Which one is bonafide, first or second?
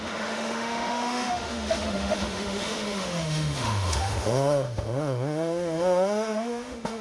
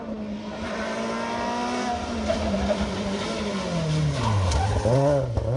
second